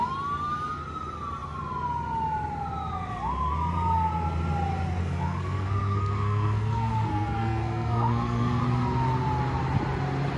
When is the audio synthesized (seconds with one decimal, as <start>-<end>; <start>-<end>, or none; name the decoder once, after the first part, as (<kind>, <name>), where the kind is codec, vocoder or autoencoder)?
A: 5.0-8.6 (codec, SNAC)